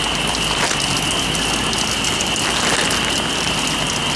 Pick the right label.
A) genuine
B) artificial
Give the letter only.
A